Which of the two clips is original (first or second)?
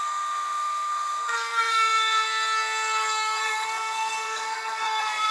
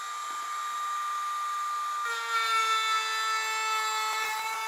second